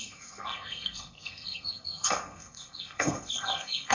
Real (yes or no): no